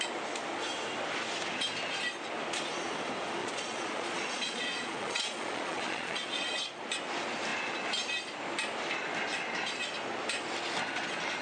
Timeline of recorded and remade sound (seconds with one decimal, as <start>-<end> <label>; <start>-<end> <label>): 0.0-3.4 recorded; 3.4-6.8 remade; 6.8-11.4 recorded